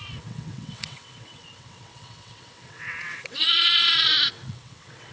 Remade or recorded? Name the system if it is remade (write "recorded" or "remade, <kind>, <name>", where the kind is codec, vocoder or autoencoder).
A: remade, vocoder, WaveNeXt